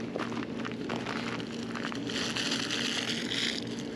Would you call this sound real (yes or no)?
yes